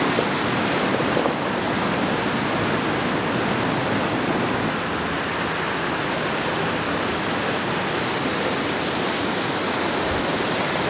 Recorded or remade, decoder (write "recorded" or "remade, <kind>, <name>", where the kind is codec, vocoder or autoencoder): recorded